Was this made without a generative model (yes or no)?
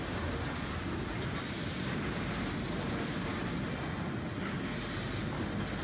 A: yes